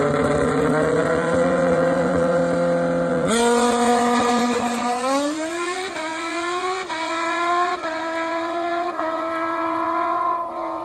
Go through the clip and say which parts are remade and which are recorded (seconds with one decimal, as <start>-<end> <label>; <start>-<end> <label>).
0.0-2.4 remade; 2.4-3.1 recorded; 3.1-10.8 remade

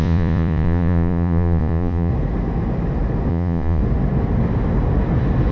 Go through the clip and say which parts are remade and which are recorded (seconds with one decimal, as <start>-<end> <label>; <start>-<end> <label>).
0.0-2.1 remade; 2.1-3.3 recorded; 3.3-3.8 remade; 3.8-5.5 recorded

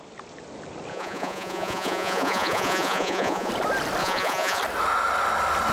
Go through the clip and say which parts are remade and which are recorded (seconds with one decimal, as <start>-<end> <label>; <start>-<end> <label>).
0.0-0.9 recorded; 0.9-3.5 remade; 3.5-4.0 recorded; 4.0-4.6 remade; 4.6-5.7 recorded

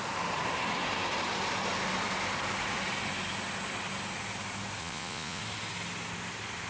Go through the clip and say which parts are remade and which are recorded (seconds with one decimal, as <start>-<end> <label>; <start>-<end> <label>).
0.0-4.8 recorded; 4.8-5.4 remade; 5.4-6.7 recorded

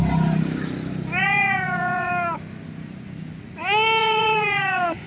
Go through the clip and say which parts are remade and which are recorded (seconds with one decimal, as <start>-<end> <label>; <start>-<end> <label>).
0.0-1.2 recorded; 1.2-2.1 remade; 2.1-4.0 recorded; 4.0-5.1 remade

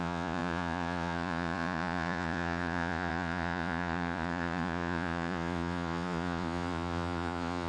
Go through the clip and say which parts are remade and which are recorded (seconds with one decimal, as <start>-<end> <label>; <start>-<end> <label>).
0.0-7.7 remade